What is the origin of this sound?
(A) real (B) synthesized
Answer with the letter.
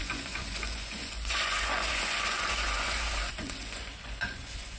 B